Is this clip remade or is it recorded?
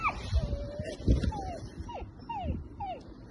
recorded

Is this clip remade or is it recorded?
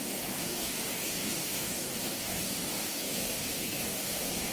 remade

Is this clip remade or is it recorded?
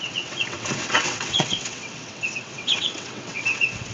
remade